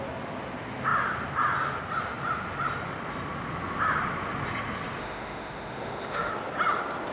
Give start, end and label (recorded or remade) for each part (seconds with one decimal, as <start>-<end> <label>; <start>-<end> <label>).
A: 0.0-5.0 recorded; 5.0-6.3 remade; 6.3-7.1 recorded

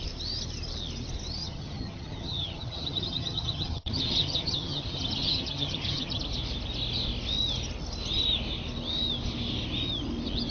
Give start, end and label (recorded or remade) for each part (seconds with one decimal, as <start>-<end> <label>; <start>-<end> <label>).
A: 0.0-1.4 recorded; 1.4-6.2 remade; 6.2-10.5 recorded